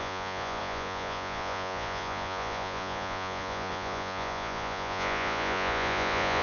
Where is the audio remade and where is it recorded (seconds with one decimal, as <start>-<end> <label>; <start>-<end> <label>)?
0.0-6.4 remade